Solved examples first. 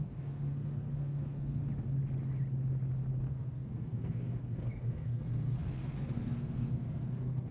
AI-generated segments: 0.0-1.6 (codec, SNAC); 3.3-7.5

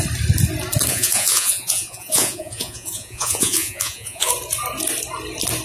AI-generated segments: 0.9-4.3 (vocoder, Vocos)

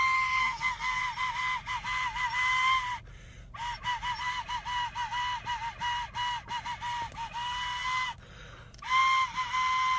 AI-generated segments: 0.4-1.0 (codec, SNAC)

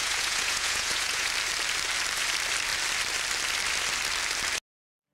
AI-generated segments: 0.0-1.3 (vocoder, Vocos)

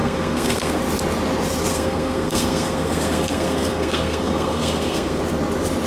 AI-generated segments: 0.0-0.8 (codec, SNAC); 1.7-5.2

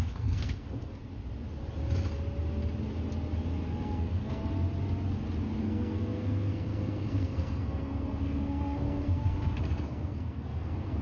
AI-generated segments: 0.0-1.0 (codec, SNAC); 3.7-4.4; 5.6-11.0

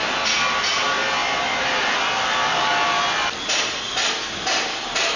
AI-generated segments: none